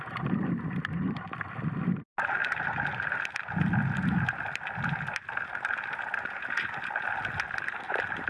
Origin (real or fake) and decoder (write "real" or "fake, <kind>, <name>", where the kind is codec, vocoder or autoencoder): real